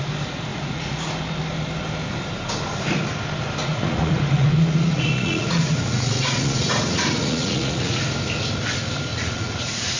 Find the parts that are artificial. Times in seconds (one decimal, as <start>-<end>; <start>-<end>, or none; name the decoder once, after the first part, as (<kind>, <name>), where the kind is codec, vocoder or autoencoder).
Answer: 0.5-1.1 (vocoder, Vocos); 3.6-8.0; 9.1-10.0